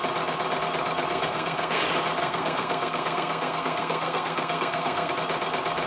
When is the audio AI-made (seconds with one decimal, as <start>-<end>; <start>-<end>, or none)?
1.1-1.8; 2.2-5.1